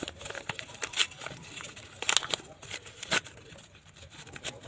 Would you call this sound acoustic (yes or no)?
yes